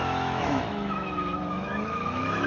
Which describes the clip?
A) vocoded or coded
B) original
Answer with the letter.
A